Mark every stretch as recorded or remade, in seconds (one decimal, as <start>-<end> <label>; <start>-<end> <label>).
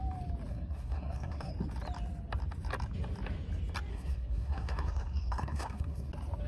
0.0-0.5 recorded; 0.5-1.5 remade; 1.5-3.9 recorded; 3.9-6.1 remade; 6.1-6.5 recorded